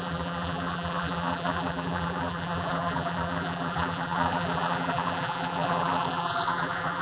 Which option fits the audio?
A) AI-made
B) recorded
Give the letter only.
A